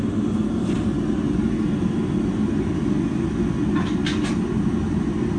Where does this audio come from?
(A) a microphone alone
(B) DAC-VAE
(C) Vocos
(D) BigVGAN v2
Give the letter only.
A